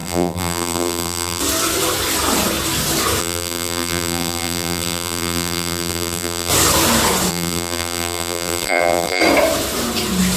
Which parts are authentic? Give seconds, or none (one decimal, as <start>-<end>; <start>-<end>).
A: 1.4-3.2; 6.5-7.3; 9.2-10.4